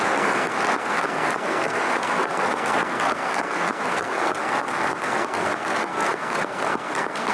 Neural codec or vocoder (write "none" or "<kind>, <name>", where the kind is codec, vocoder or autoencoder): codec, SNAC